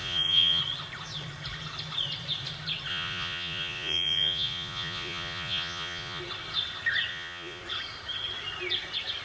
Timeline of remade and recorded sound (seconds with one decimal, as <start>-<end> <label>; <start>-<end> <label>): 0.0-0.6 remade; 0.6-2.9 recorded; 2.9-6.2 remade; 6.2-7.1 recorded; 7.1-7.6 remade; 7.6-9.2 recorded